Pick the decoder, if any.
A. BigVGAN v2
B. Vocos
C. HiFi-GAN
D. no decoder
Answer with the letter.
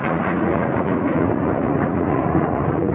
B